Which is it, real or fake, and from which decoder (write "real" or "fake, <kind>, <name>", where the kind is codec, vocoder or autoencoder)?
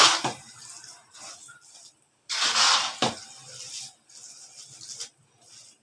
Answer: real